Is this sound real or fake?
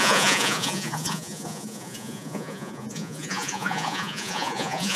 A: fake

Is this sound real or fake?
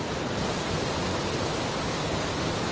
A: real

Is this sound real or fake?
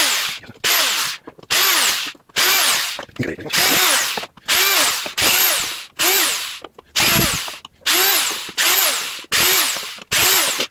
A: real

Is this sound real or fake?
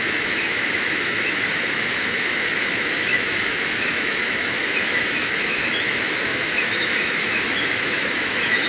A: fake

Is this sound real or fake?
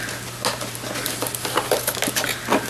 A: real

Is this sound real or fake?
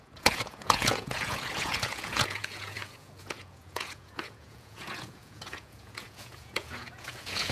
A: fake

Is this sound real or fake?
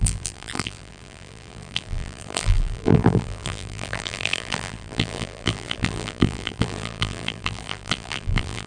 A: fake